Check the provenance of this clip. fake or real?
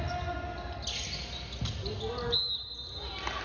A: real